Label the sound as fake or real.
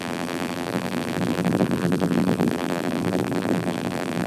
fake